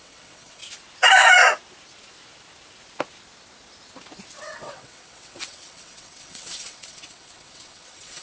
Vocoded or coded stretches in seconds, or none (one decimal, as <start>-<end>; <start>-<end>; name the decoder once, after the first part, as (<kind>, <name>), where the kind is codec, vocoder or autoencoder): 0.0-0.6 (vocoder, WaveNeXt); 4.4-8.2